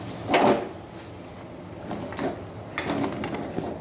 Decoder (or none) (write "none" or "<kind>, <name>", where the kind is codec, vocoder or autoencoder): none